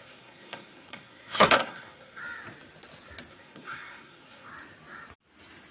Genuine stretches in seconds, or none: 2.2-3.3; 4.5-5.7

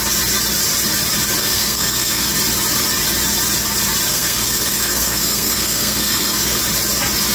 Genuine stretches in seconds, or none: 0.0-1.4; 2.3-4.1; 6.6-7.3

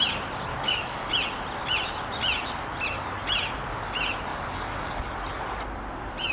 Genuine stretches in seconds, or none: 0.0-0.5; 1.1-4.3; 5.1-6.3

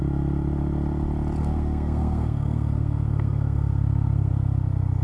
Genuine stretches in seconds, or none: 0.0-1.4; 4.3-5.0

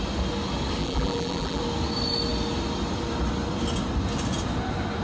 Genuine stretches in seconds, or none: 0.0-0.8; 1.6-5.0

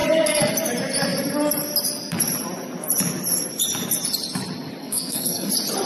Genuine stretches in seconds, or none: 0.0-4.8; 5.5-5.9

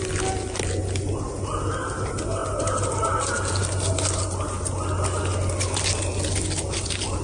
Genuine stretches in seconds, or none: 0.0-7.2

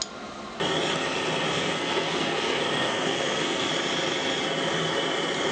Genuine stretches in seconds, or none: 0.0-1.5; 3.7-5.5